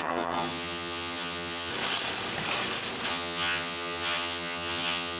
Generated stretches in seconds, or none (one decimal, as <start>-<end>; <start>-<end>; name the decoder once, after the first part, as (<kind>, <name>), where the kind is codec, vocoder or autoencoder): 0.0-1.7 (vocoder, HiFi-GAN); 3.1-5.2